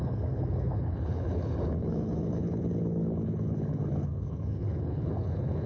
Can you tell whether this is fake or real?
fake